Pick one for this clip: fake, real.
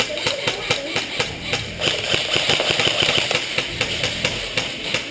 real